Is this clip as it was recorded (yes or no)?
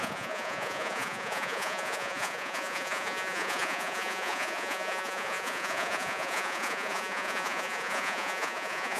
no